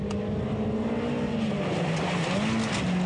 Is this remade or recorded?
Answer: recorded